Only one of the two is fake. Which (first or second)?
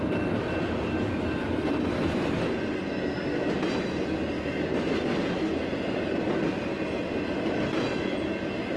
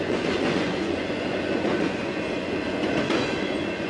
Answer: second